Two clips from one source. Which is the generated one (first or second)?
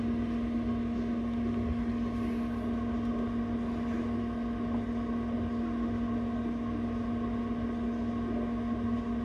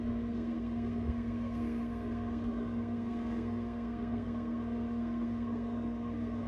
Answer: second